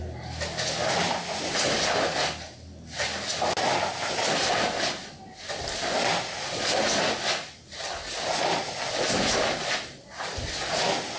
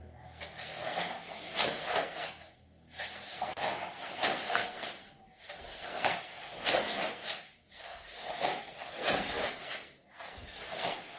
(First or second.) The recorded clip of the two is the first